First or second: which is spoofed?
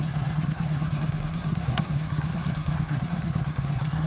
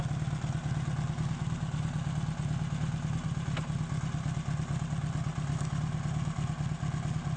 first